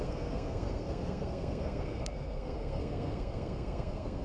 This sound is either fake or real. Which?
fake